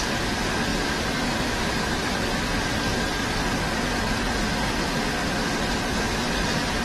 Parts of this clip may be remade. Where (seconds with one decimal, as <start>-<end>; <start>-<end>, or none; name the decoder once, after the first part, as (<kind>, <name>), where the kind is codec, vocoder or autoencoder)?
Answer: 0.7-3.1 (vocoder, BigVGAN v2)